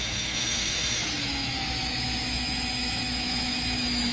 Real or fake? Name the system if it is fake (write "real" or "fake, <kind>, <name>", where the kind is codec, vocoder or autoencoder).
fake, autoencoder, DAC-VAE